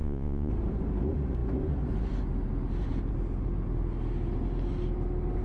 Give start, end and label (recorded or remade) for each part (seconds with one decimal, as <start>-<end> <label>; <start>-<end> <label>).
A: 0.0-0.5 remade; 0.5-5.4 recorded